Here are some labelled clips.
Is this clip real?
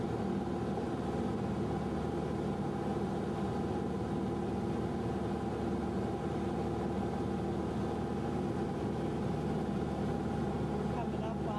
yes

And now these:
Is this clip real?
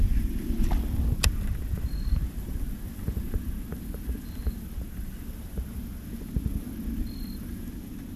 yes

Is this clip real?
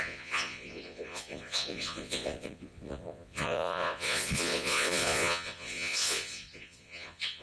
no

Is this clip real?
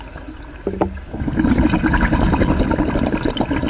yes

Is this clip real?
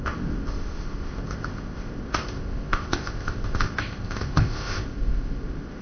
no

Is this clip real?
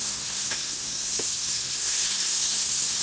no